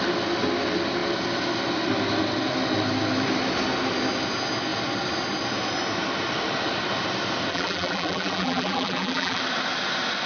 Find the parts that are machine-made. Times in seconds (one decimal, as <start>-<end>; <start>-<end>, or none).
7.5-9.4